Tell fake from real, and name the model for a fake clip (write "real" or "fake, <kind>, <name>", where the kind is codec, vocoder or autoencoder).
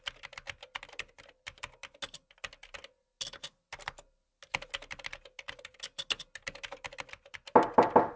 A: real